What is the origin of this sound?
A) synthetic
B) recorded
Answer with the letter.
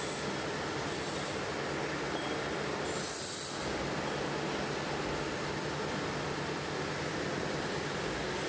B